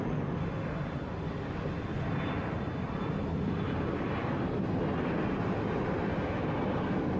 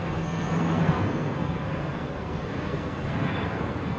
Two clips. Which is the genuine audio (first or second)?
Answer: first